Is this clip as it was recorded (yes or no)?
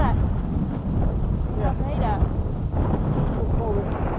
yes